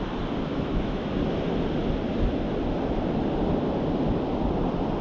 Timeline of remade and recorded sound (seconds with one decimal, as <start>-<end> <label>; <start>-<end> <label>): 0.0-0.5 recorded; 0.5-1.1 remade; 1.1-5.0 recorded